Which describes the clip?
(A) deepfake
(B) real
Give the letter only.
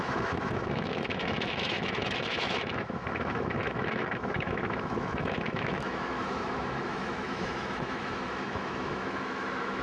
A